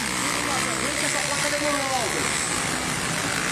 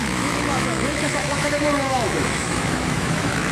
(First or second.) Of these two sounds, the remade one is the second